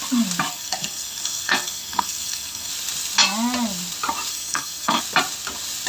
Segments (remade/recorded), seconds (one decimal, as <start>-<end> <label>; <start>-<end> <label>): 0.0-0.5 recorded; 0.5-2.7 remade; 2.7-4.3 recorded; 4.3-5.0 remade; 5.0-5.9 recorded